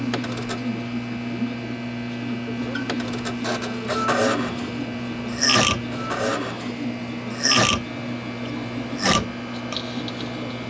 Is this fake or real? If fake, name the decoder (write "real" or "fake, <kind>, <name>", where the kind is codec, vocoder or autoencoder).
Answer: real